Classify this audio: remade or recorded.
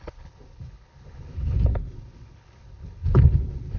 remade